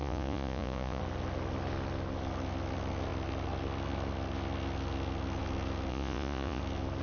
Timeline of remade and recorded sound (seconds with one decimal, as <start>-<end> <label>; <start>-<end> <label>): 0.0-1.0 remade; 1.0-5.9 recorded; 5.9-6.6 remade; 6.6-7.0 recorded